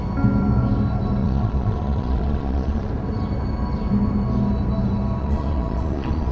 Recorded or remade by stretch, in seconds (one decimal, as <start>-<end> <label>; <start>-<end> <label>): 0.0-1.2 recorded; 1.2-2.9 remade; 2.9-5.2 recorded; 5.2-6.3 remade